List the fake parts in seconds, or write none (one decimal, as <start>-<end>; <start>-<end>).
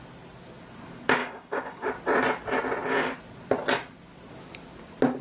1.2-1.9